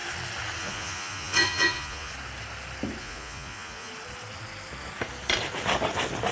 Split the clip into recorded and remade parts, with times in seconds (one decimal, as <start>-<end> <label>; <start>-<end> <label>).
0.0-0.6 recorded; 0.6-2.1 remade; 2.1-3.0 recorded; 3.0-3.9 remade; 3.9-6.3 recorded